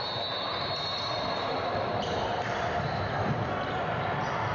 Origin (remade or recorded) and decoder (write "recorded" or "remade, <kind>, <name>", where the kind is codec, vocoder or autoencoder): recorded